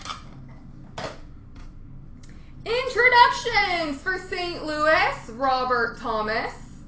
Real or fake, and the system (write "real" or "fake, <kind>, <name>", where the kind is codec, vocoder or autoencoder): real